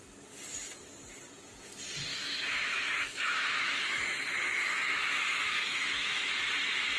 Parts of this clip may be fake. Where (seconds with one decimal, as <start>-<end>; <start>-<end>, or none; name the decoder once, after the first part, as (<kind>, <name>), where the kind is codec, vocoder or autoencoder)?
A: 2.1-6.3 (autoencoder, DAC-VAE)